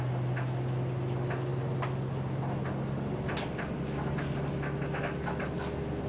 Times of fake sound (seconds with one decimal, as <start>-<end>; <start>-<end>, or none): none